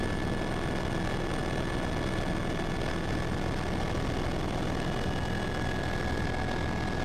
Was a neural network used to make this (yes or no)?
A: no